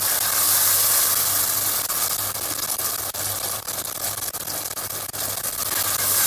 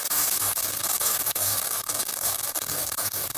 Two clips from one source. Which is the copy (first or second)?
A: second